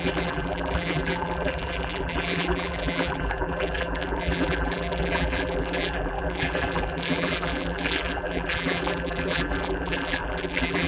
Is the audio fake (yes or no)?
yes